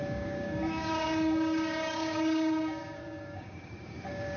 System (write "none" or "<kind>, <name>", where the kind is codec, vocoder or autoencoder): codec, DAC